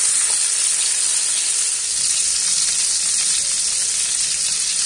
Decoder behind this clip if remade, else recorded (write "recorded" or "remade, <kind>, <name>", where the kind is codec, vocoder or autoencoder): recorded